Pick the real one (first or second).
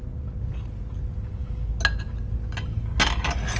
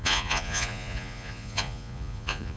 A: first